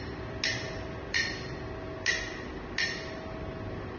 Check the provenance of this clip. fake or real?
real